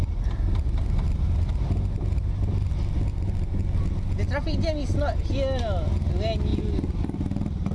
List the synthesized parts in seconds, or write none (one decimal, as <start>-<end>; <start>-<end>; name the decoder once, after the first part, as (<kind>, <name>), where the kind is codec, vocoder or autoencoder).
6.5-7.2 (vocoder, BigVGAN v2)